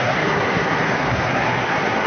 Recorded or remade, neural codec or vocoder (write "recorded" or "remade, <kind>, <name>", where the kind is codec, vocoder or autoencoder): remade, codec, SNAC